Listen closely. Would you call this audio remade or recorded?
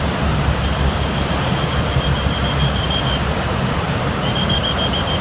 recorded